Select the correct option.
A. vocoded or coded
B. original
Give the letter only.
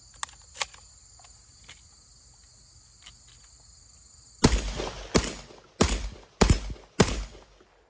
B